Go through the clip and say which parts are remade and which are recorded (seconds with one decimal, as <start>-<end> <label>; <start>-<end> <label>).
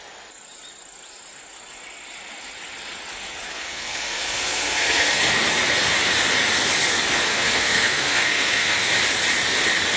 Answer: 0.0-3.5 recorded; 3.5-5.2 remade; 5.2-7.3 recorded; 7.3-8.9 remade; 8.9-10.0 recorded